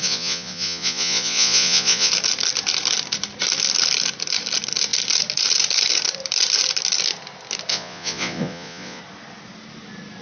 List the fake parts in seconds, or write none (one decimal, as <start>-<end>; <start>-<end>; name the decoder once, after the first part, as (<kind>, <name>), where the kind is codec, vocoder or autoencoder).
0.0-2.1 (vocoder, Vocos); 7.7-9.0